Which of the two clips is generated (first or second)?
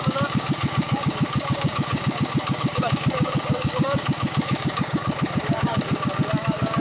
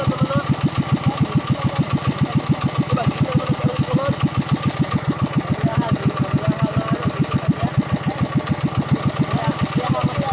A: first